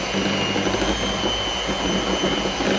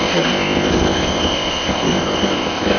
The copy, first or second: second